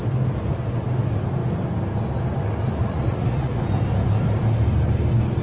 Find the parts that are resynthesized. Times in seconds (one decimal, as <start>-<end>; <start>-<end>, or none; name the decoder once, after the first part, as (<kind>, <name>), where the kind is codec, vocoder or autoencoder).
2.8-3.6 (vocoder, Vocos)